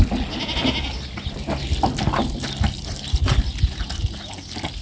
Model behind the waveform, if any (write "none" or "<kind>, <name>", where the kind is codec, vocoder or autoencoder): none